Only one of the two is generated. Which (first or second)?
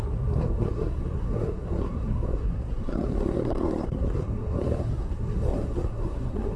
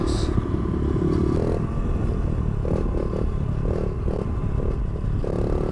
first